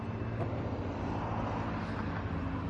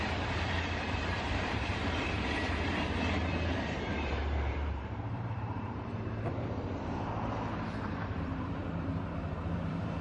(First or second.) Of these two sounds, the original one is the first